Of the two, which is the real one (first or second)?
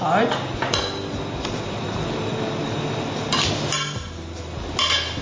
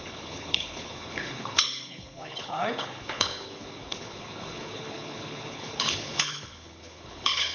first